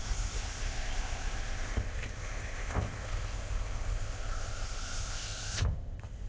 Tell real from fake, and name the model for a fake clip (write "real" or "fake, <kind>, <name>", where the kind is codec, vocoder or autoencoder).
fake, codec, ZipCodec